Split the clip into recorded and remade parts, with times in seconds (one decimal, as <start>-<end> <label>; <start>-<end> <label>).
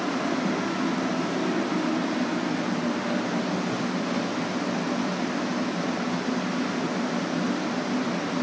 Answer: 0.0-8.4 recorded